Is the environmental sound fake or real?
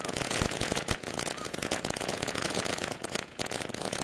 fake